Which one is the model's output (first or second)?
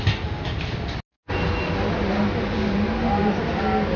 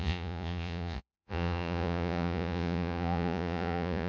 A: second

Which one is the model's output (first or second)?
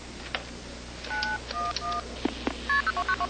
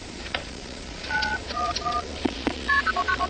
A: second